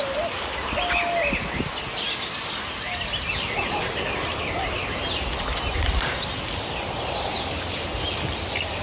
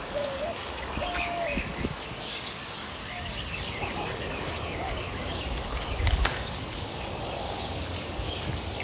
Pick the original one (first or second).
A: first